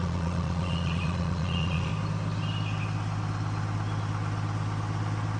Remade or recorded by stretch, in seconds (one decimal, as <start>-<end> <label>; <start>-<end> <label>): 0.0-1.9 remade; 1.9-5.4 recorded